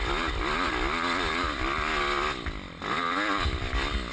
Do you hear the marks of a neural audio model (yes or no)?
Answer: no